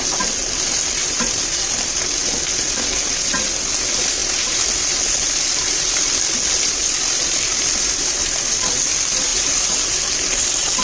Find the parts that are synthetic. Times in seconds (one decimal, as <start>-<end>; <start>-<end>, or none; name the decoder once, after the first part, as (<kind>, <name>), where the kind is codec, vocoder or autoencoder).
1.0-1.6 (vocoder, BigVGAN v2); 9.3-9.9